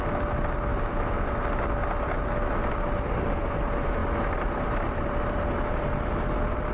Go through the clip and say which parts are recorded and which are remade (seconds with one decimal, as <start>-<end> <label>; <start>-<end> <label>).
0.0-4.0 recorded; 4.0-5.9 remade; 5.9-6.7 recorded